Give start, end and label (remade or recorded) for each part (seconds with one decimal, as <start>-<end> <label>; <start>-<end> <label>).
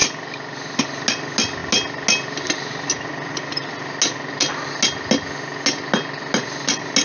0.0-7.0 recorded